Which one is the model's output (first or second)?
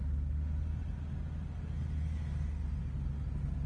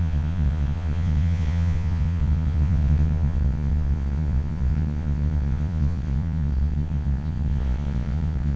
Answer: second